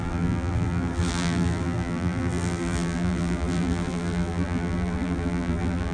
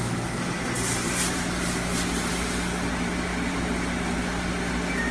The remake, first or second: first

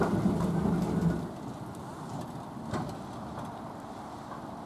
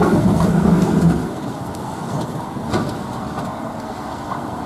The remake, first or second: second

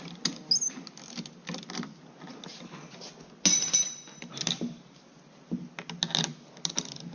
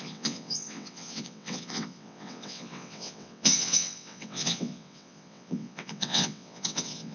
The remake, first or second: second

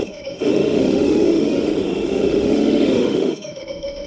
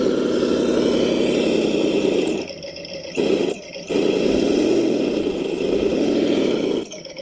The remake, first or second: first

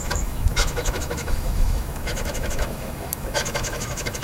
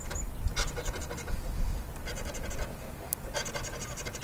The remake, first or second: first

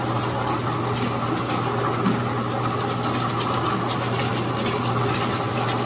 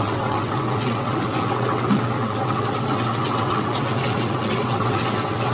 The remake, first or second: second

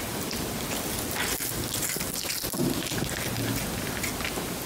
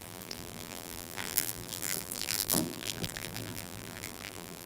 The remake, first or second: second